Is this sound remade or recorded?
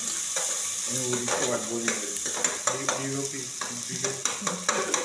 recorded